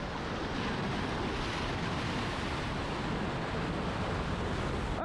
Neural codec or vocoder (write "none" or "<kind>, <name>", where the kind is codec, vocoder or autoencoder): none